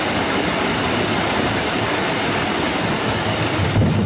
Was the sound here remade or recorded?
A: recorded